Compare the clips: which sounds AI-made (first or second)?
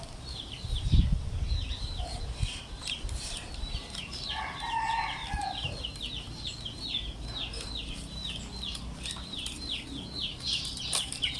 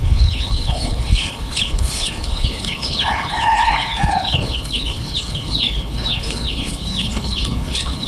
second